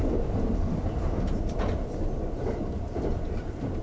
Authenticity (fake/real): real